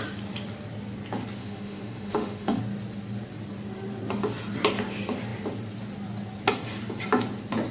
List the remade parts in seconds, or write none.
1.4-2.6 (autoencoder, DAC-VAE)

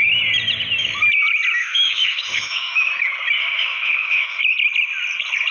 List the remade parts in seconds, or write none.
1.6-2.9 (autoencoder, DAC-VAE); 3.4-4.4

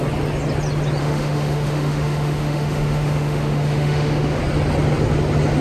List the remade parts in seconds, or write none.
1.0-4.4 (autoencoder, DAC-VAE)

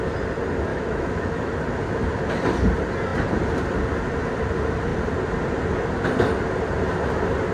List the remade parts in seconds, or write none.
0.7-1.5 (autoencoder, DAC-VAE)